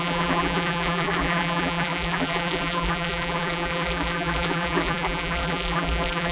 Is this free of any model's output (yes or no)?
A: no